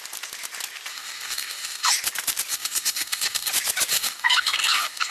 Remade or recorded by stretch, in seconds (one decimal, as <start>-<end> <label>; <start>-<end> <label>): 0.0-0.9 recorded; 0.9-1.9 remade; 1.9-2.5 recorded; 2.5-3.5 remade; 3.5-3.9 recorded; 3.9-5.1 remade